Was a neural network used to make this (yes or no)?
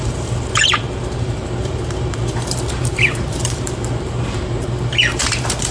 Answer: yes